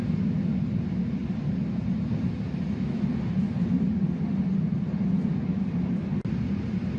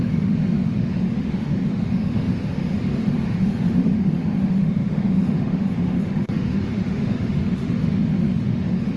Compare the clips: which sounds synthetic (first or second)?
second